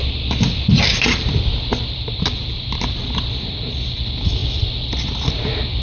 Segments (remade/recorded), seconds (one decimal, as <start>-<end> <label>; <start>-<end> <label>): 0.0-5.8 recorded